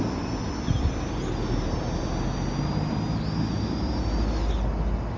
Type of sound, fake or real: real